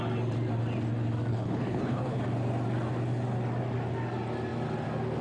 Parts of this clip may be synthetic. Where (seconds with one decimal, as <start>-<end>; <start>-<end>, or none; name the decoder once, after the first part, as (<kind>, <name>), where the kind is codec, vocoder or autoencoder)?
1.3-2.2 (codec, HILCodec)